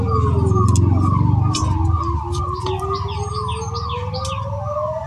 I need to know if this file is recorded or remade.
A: recorded